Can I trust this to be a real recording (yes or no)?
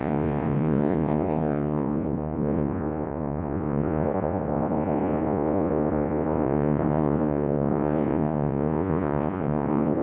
no